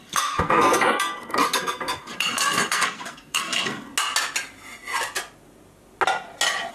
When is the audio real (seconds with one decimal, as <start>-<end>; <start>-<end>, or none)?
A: 3.9-6.7